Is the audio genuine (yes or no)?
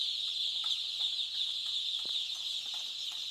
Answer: yes